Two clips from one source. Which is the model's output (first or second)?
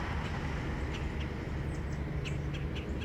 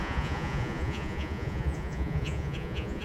second